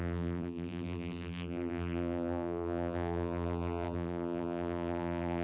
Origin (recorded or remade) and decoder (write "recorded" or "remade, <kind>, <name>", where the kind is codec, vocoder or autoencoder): remade, vocoder, BigVGAN v2